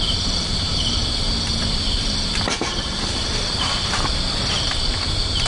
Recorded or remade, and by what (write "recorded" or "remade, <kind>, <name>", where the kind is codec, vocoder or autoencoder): remade, vocoder, BigVGAN v2